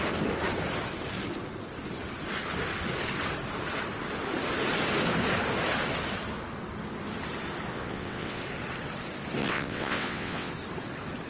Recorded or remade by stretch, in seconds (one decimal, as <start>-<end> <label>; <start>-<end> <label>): 0.0-7.7 recorded; 7.7-8.4 remade; 8.4-9.4 recorded; 9.4-10.5 remade; 10.5-11.3 recorded